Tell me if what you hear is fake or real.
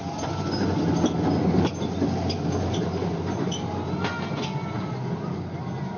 real